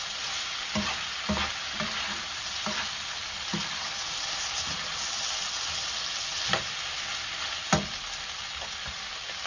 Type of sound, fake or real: real